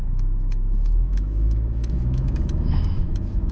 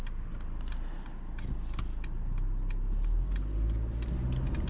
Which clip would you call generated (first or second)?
first